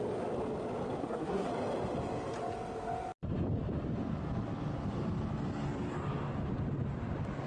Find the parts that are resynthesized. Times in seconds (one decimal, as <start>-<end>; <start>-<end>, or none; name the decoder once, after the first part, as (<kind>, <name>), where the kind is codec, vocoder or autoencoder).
1.0-1.5 (codec, SNAC)